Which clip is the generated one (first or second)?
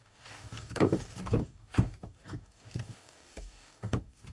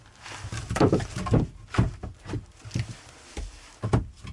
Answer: first